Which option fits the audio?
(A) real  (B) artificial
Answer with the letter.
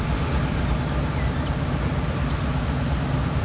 A